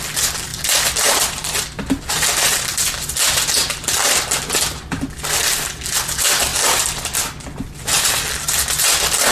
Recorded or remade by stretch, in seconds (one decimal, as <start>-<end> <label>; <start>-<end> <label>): 0.0-0.5 recorded; 0.5-5.6 remade; 5.6-6.5 recorded; 6.5-9.3 remade